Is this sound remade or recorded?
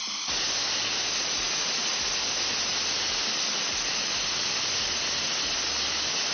recorded